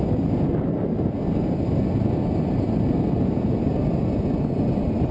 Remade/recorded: recorded